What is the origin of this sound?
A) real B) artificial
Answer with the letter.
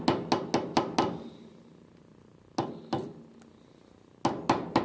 A